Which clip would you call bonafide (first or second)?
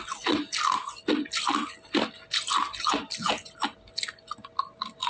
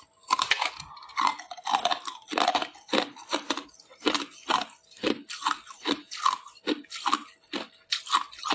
first